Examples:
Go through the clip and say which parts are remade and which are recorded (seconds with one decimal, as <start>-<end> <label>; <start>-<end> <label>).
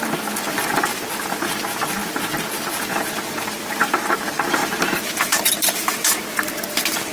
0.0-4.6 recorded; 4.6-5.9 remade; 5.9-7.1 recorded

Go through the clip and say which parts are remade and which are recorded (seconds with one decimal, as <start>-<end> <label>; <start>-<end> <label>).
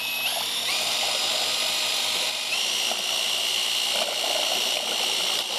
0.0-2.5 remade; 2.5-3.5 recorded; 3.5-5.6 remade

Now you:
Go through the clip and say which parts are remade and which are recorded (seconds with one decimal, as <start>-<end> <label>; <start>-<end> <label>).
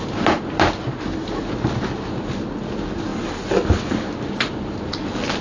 0.0-5.4 recorded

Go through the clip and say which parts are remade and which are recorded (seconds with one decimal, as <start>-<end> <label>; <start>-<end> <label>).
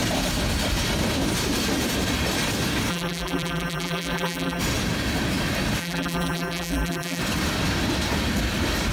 0.0-2.9 recorded; 2.9-4.6 remade; 4.6-5.8 recorded; 5.8-7.2 remade; 7.2-8.9 recorded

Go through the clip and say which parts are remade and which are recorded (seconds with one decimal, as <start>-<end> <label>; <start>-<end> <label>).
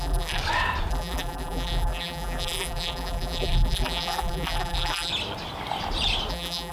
0.0-0.4 remade; 0.4-0.9 recorded; 0.9-5.1 remade; 5.1-6.3 recorded; 6.3-6.7 remade